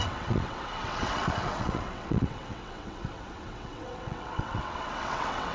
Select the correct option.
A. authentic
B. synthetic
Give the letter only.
B